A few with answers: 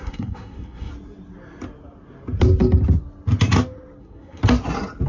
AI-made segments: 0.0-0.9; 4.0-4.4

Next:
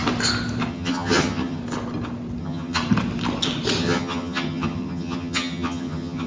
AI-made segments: 0.7-1.6; 2.4-2.8; 3.8-6.3

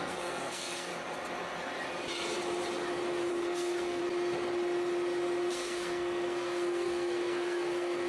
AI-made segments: 0.0-0.9; 3.3-4.0; 5.5-8.1

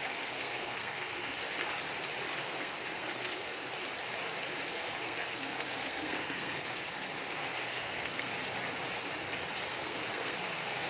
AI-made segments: 0.0-1.4; 2.3-3.6; 4.7-8.3; 9.7-10.9